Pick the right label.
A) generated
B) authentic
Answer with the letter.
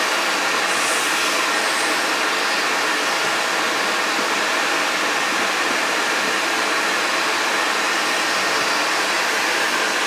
B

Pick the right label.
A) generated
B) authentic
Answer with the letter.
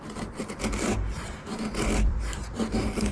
A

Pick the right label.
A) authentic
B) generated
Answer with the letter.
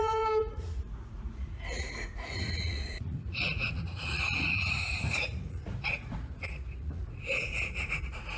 B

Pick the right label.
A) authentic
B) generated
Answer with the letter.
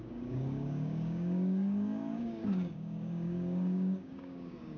B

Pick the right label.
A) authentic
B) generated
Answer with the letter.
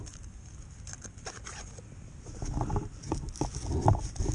A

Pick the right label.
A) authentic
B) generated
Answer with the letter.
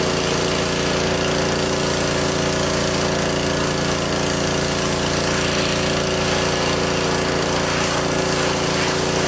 A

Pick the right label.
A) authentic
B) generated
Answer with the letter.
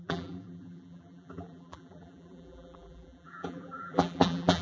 B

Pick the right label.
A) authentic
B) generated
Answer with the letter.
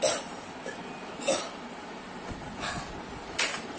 A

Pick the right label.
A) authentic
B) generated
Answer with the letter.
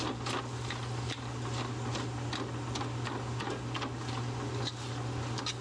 A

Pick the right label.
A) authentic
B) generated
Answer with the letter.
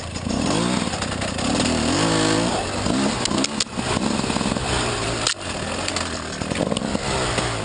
A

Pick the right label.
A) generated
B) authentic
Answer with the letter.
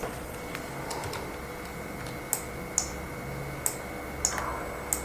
B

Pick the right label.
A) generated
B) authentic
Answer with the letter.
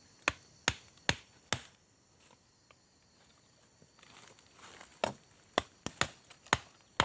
B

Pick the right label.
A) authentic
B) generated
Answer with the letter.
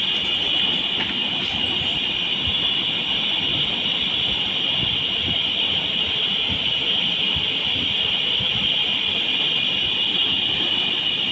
A